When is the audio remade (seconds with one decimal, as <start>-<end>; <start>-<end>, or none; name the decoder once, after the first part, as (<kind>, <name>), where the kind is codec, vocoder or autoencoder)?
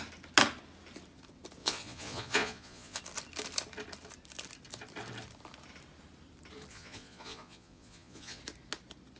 1.6-3.0 (vocoder, Vocos); 6.7-8.4